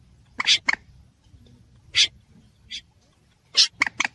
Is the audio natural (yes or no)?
yes